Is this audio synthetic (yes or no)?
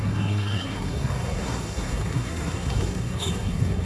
yes